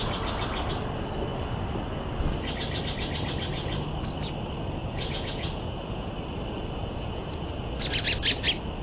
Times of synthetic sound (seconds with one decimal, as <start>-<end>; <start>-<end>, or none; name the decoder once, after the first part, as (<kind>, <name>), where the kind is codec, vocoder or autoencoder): 4.8-6.1 (vocoder, Vocos); 6.8-7.7